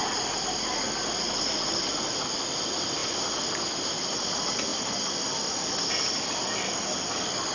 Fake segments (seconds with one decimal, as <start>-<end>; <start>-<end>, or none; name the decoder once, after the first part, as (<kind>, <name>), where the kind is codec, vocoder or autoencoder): 0.0-3.0 (vocoder, BigVGAN v2); 3.9-7.5

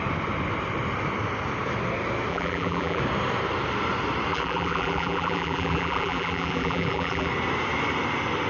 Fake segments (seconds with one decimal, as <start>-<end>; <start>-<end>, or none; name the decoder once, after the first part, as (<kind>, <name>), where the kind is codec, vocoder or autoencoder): 2.3-3.0 (vocoder, BigVGAN v2); 4.3-7.3

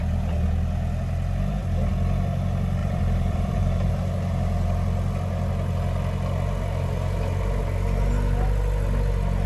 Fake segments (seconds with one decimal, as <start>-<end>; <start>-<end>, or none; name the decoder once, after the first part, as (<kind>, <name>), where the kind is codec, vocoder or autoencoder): 2.8-3.9 (vocoder, BigVGAN v2)

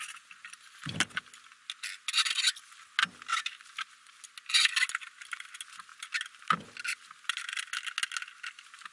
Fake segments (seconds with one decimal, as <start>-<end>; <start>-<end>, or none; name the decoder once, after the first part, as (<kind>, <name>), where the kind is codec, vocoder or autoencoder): 3.3-3.9 (vocoder, BigVGAN v2)

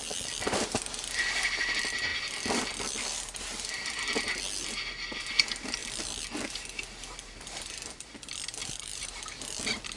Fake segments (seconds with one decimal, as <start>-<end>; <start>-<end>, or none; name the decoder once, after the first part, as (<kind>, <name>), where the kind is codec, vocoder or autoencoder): 8.6-9.2 (vocoder, BigVGAN v2)

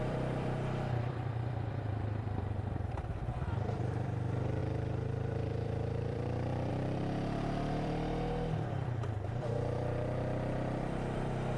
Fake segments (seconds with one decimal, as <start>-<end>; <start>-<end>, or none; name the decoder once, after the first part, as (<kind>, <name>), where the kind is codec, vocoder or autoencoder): 0.0-11.6 (vocoder, BigVGAN v2)